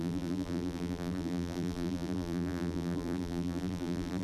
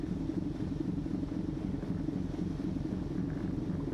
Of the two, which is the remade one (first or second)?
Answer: first